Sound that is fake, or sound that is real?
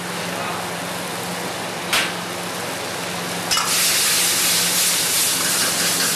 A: real